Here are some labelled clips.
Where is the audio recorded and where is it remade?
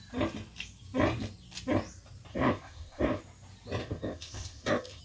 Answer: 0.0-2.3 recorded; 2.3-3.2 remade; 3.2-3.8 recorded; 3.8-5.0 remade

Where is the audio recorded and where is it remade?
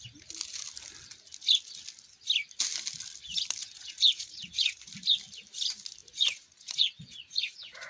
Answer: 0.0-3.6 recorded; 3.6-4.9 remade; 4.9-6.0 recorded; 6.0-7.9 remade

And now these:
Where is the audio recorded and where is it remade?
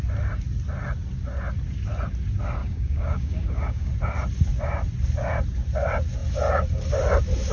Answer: 0.0-2.6 recorded; 2.6-3.9 remade; 3.9-7.5 recorded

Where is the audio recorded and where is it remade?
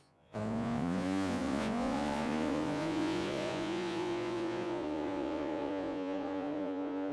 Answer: 0.0-7.1 remade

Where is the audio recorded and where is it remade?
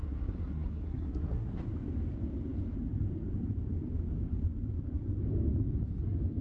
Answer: 0.0-1.6 remade; 1.6-6.4 recorded